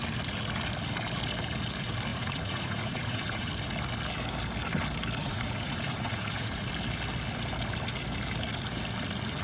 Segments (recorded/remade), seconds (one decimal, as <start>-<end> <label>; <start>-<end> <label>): 0.0-2.1 recorded; 2.1-3.5 remade; 3.5-5.2 recorded; 5.2-6.7 remade; 6.7-9.4 recorded